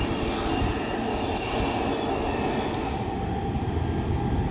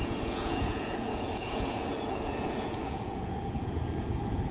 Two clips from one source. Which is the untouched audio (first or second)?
first